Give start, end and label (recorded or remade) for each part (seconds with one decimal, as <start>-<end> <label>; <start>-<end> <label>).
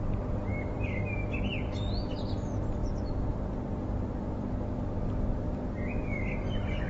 0.0-0.5 recorded; 0.5-1.0 remade; 1.0-2.8 recorded; 2.8-4.5 remade; 4.5-6.0 recorded; 6.0-6.9 remade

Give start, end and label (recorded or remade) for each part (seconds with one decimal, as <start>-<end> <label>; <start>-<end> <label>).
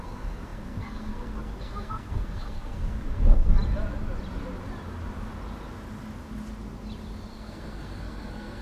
0.0-3.5 remade; 3.5-7.3 recorded; 7.3-8.6 remade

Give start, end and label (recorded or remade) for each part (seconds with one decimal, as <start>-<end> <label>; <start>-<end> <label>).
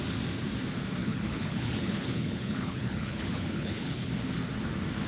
0.0-1.0 recorded; 1.0-4.1 remade; 4.1-5.1 recorded